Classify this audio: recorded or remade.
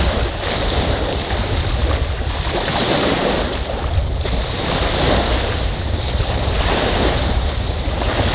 recorded